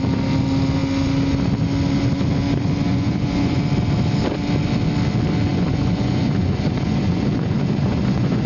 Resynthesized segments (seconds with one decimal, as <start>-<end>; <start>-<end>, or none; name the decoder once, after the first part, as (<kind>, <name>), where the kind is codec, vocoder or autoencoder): 2.9-3.6 (vocoder, Vocos); 5.5-8.5